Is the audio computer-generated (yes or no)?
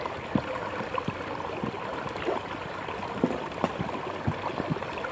no